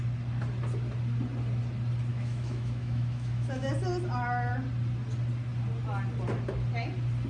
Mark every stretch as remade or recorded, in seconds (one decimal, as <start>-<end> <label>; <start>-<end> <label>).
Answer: 0.0-2.1 recorded; 2.1-3.7 remade; 3.7-7.3 recorded